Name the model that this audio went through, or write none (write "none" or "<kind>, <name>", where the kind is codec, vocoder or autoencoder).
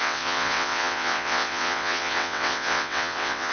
vocoder, WaveNeXt